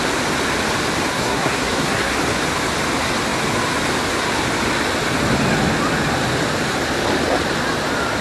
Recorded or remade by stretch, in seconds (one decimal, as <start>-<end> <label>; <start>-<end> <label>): 0.0-1.1 recorded; 1.1-2.1 remade; 2.1-8.2 recorded